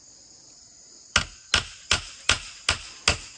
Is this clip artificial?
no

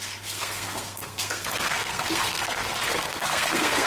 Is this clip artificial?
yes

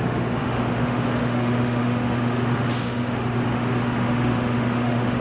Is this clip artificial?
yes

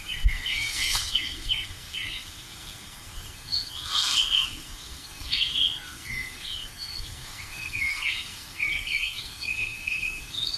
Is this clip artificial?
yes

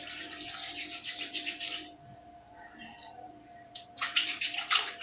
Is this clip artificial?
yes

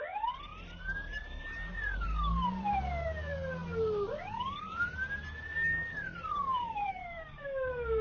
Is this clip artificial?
no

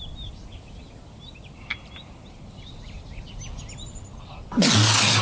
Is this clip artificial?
no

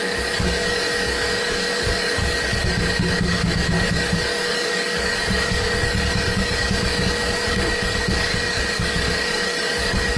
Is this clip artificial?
yes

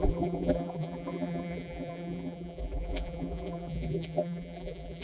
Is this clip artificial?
yes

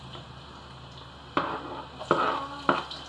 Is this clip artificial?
no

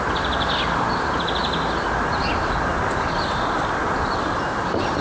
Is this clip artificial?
no